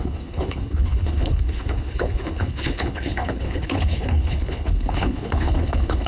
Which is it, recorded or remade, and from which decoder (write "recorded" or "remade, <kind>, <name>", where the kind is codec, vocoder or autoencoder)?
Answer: remade, codec, HILCodec